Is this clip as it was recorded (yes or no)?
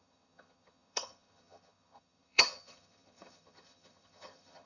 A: no